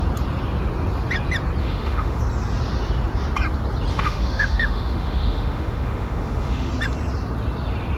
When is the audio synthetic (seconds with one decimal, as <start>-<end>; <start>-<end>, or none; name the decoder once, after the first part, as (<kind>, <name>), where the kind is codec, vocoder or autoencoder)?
1.6-2.2 (autoencoder, DAC-VAE); 3.9-6.7